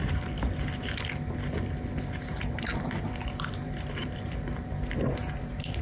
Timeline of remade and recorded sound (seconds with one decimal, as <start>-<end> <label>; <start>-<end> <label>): 0.0-2.0 recorded; 2.0-2.7 remade; 2.7-3.6 recorded; 3.6-5.8 remade